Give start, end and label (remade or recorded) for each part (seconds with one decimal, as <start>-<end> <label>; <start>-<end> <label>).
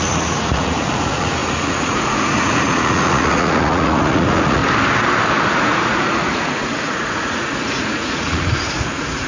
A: 0.0-4.6 remade; 4.6-5.5 recorded; 5.5-9.3 remade